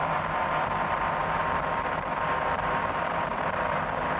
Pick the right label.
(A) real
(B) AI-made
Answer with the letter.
B